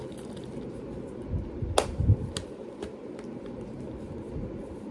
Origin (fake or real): real